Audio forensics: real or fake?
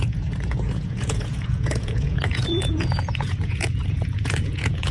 fake